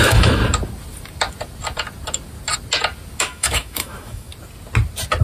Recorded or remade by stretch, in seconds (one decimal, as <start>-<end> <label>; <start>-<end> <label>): 0.0-0.4 remade; 0.4-3.2 recorded; 3.2-4.3 remade; 4.3-5.2 recorded